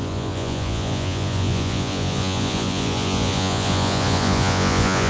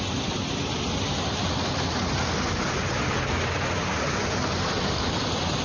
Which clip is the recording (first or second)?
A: second